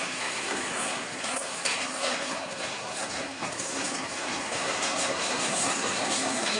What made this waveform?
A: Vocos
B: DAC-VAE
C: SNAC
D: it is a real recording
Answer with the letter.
C